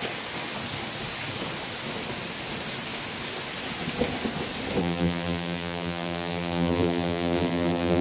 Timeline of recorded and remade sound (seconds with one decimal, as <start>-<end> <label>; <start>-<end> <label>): 0.0-4.8 recorded; 4.8-8.0 remade